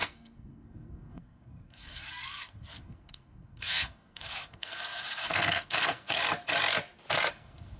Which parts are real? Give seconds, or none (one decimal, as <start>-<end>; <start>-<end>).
6.2-7.3